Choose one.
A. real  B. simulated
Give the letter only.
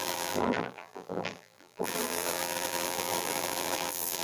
B